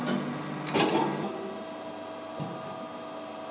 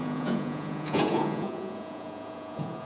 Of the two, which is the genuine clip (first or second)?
first